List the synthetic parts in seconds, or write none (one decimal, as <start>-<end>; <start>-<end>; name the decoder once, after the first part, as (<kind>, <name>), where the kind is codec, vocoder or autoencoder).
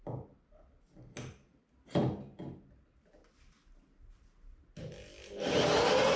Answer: none